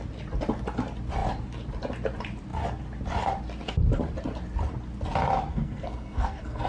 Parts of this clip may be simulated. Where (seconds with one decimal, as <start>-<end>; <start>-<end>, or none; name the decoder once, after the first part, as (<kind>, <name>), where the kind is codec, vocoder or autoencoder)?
5.5-6.7 (codec, SNAC)

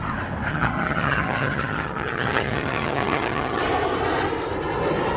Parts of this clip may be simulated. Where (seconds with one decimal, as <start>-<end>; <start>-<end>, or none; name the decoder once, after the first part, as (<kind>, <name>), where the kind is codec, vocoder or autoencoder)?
0.5-3.6 (vocoder, HiFi-GAN)

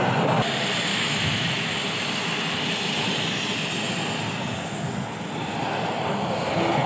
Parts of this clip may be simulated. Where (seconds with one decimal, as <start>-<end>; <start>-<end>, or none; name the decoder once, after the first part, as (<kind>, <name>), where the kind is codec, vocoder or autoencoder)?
0.9-1.7 (autoencoder, DAC-VAE)

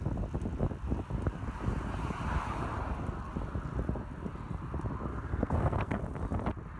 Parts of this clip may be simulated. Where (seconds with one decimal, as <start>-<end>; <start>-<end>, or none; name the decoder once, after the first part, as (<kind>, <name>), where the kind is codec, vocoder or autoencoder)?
5.1-6.0 (codec, SNAC)

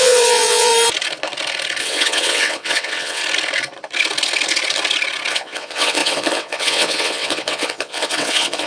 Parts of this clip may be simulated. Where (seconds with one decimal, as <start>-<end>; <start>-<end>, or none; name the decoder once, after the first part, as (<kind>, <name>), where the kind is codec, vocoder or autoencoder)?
0.0-0.7 (vocoder, WaveNeXt); 1.8-3.2; 5.3-8.7

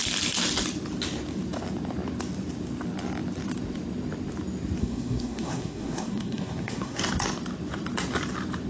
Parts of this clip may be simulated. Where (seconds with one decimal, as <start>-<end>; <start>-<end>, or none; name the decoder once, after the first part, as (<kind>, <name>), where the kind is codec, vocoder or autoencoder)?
4.8-7.0 (codec, SNAC)

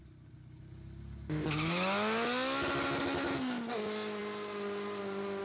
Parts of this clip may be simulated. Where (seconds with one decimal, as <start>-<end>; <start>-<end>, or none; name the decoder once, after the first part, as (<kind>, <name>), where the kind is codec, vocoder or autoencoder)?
none